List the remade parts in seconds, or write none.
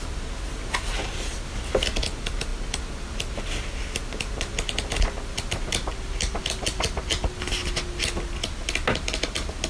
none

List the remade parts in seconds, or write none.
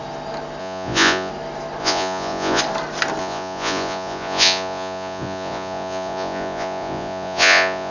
0.6-1.3 (vocoder, Vocos); 1.8-2.6; 3.2-7.9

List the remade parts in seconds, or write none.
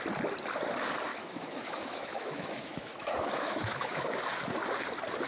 1.1-4.2 (autoencoder, DAC-VAE)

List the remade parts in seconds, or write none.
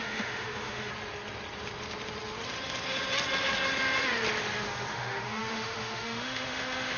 0.0-0.9 (autoencoder, DAC-VAE); 4.9-7.0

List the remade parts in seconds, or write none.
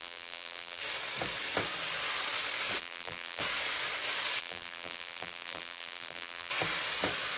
0.0-0.8 (vocoder, BigVGAN v2); 2.8-3.4; 4.4-6.5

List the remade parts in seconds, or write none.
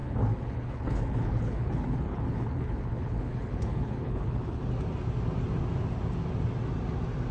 0.0-4.6 (codec, HILCodec)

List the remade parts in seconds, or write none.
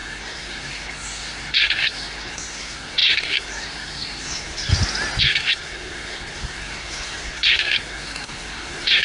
0.0-4.7 (codec, SNAC); 5.2-9.0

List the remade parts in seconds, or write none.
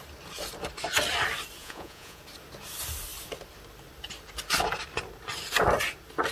1.6-2.2 (vocoder, Vocos)